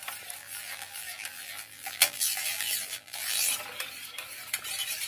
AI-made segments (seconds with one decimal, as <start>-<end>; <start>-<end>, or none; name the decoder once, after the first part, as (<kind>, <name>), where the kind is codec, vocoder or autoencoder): 0.4-3.5 (vocoder, BigVGAN v2)